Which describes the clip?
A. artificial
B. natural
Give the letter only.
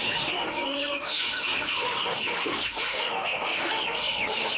A